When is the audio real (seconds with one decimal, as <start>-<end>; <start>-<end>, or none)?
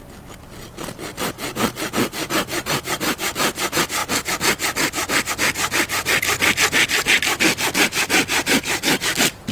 0.0-9.5